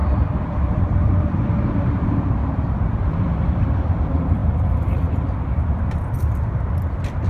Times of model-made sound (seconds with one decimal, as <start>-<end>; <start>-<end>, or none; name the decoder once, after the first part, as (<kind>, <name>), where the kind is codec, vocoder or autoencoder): 0.0-7.3 (vocoder, BigVGAN v2)